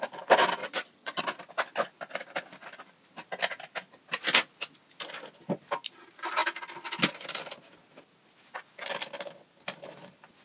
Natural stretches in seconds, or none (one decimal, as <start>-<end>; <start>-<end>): 0.0-0.6; 1.2-10.4